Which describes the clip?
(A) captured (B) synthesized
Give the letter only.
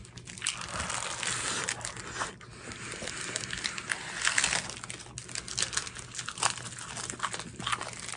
A